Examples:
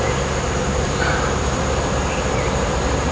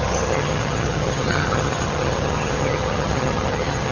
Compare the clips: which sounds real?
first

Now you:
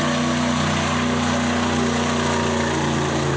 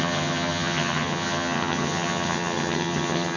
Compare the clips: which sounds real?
first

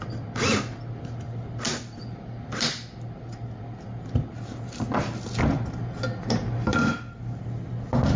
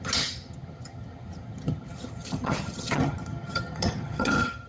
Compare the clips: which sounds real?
first